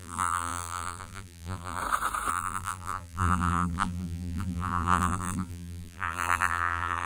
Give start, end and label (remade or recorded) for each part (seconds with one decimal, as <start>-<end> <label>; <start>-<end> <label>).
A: 0.0-1.8 remade; 1.8-2.3 recorded; 2.3-7.1 remade